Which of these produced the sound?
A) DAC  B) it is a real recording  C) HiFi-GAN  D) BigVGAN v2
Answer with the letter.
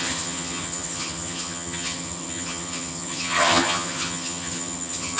C